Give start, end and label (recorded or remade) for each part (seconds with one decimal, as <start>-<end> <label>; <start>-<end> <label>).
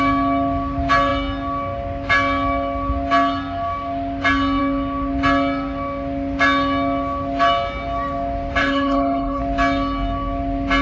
0.0-8.6 recorded; 8.6-9.4 remade; 9.4-10.8 recorded